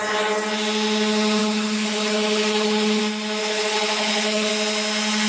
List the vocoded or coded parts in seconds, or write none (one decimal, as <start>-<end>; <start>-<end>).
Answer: 1.4-3.0; 3.4-4.5